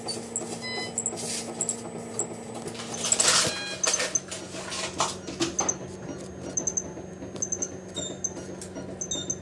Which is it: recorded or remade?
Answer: recorded